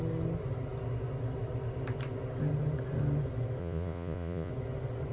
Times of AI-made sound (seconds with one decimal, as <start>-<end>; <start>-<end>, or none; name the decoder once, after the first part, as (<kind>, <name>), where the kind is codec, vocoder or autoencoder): 3.6-4.5 (vocoder, Vocos)